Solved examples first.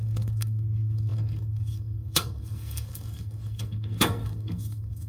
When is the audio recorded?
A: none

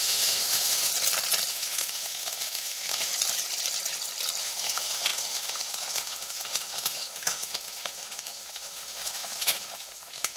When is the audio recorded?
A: 0.9-1.5; 3.1-4.4

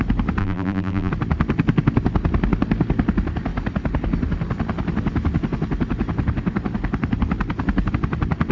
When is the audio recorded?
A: 0.0-0.4; 1.1-8.5